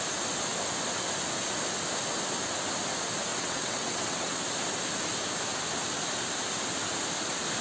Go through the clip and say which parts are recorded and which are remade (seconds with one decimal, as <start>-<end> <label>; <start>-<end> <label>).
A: 0.0-3.3 recorded; 3.3-4.4 remade; 4.4-7.6 recorded